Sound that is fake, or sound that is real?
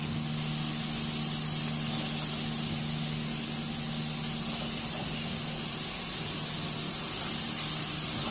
real